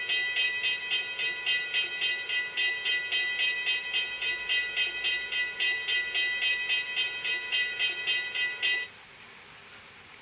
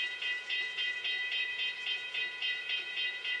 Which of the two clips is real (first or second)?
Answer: first